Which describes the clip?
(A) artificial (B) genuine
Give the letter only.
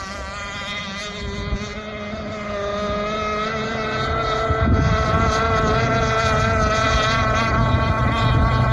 B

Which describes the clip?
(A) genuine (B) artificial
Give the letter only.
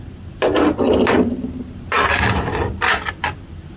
A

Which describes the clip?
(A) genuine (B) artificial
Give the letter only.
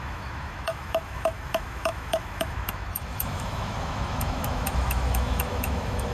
B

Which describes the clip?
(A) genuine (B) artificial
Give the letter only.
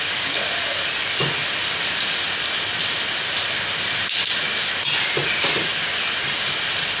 A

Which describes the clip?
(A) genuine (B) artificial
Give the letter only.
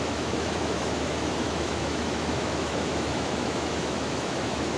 B